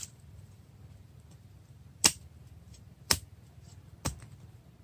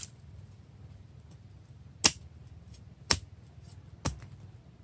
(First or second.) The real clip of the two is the second